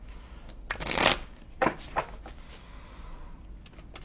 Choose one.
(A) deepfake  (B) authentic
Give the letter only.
B